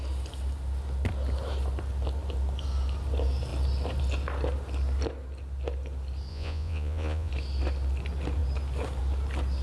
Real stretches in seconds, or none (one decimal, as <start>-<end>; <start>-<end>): 0.0-6.3; 7.3-9.6